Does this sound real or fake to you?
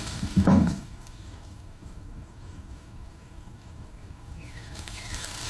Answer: fake